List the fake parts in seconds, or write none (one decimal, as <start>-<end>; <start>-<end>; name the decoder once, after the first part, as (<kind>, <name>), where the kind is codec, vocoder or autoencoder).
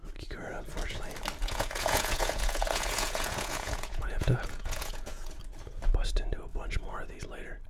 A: 1.4-5.3 (vocoder, Vocos)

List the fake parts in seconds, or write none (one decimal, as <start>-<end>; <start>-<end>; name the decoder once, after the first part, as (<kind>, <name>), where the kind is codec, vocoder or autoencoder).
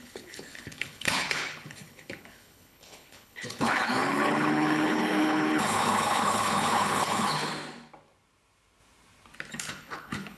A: 0.0-7.5 (codec, HILCodec); 9.5-10.4